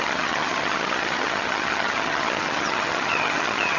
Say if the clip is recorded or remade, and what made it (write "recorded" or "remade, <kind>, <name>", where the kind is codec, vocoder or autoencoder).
remade, vocoder, HiFi-GAN